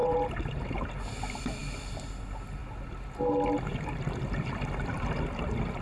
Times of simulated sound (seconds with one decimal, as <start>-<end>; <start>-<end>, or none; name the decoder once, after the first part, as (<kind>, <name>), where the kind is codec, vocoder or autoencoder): none